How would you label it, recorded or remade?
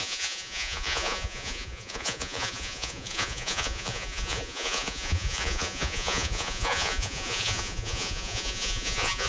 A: remade